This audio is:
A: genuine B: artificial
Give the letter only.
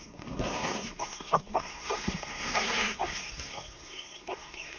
B